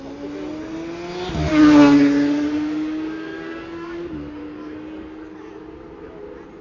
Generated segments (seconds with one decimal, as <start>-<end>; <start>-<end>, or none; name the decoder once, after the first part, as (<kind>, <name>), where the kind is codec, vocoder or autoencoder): 1.5-5.5 (codec, DAC)